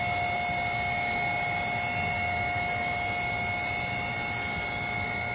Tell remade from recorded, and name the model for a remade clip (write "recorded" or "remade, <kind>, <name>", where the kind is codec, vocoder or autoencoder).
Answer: recorded